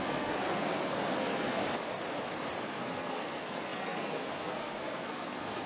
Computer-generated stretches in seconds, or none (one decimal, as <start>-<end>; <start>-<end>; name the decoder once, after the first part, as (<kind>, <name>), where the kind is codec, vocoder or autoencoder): 0.0-1.6 (codec, SNAC); 2.6-5.7